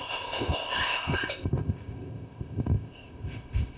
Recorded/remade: remade